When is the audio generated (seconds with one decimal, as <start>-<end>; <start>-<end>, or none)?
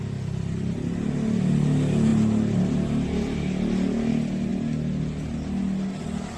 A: none